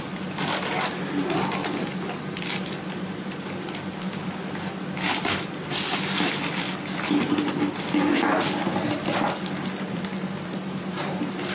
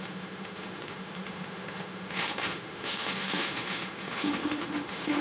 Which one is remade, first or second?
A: second